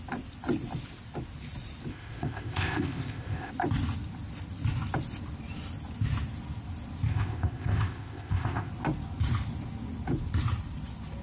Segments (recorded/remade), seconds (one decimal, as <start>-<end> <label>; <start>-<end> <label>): 0.0-1.9 recorded; 1.9-3.5 remade; 3.5-7.1 recorded; 7.1-8.7 remade; 8.7-11.2 recorded